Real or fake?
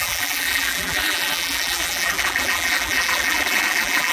fake